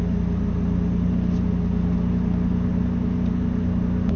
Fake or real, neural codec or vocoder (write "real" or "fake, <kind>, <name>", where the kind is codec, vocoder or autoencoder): real